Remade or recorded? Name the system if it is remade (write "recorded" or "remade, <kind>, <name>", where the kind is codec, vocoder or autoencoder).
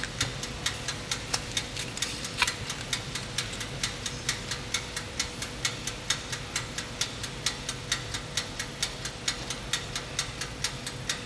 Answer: recorded